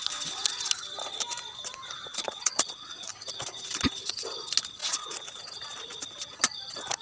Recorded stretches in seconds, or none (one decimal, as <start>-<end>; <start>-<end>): 0.0-2.1; 3.1-4.8; 5.4-7.0